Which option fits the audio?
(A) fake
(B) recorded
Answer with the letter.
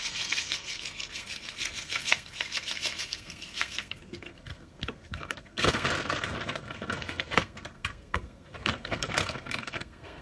A